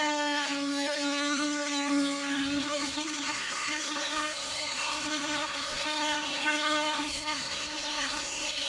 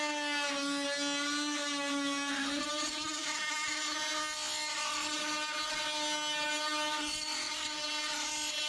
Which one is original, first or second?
second